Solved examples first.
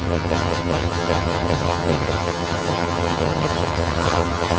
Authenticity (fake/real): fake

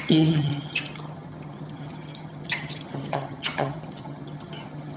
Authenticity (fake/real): fake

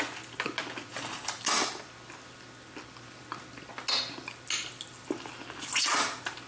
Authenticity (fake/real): real